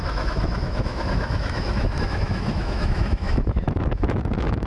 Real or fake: fake